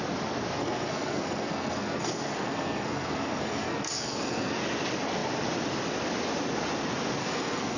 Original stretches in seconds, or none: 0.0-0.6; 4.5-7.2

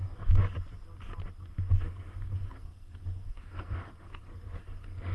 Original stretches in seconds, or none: 0.4-1.7

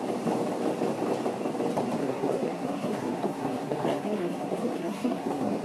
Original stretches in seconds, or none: 0.0-2.0